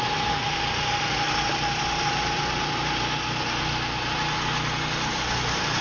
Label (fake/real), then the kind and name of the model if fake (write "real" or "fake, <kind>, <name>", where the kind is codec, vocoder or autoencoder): real